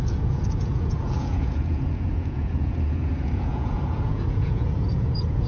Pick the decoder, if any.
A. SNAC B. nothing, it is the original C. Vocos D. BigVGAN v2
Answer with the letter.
C